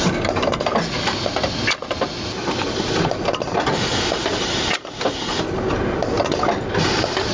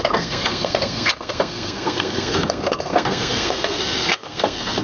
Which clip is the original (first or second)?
first